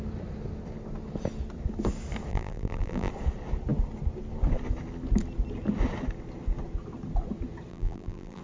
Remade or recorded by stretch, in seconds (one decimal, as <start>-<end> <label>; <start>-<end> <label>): 0.0-2.3 recorded; 2.3-3.1 remade; 3.1-7.7 recorded; 7.7-8.4 remade